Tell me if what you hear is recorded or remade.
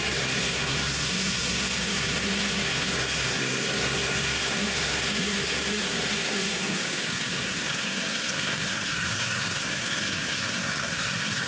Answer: remade